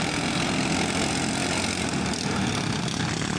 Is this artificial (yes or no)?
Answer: no